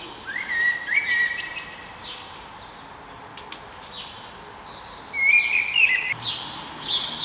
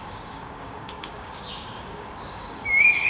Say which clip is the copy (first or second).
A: second